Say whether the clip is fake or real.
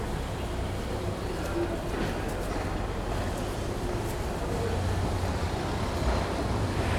real